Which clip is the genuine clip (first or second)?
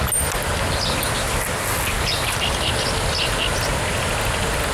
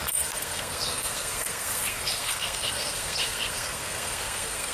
first